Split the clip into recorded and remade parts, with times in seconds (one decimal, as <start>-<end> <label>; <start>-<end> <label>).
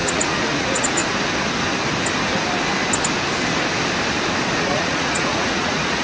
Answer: 0.0-1.0 remade; 1.0-4.6 recorded; 4.6-6.0 remade